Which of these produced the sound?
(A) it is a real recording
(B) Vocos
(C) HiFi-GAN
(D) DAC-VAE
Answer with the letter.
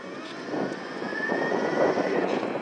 B